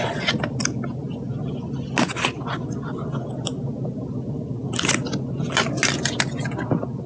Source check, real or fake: real